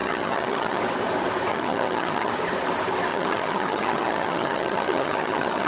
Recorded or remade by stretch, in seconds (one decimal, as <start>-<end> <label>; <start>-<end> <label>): 0.0-0.8 remade; 0.8-1.5 recorded; 1.5-2.3 remade; 2.3-3.1 recorded; 3.1-5.7 remade

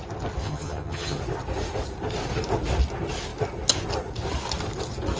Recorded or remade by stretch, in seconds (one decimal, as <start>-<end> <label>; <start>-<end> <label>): 0.0-0.4 recorded; 0.4-1.2 remade; 1.2-5.2 recorded

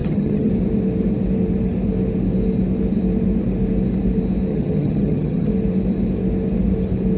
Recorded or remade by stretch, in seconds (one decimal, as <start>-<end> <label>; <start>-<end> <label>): 0.0-0.5 remade; 0.5-4.5 recorded; 4.5-5.5 remade; 5.5-7.2 recorded

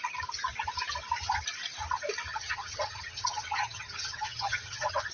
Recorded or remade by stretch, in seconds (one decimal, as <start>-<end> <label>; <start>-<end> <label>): 0.0-2.3 recorded; 2.3-5.1 remade

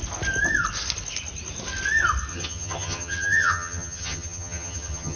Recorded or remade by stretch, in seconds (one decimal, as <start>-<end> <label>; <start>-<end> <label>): 0.0-2.3 recorded; 2.3-5.2 remade